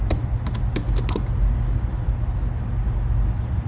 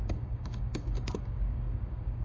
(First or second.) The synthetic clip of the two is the second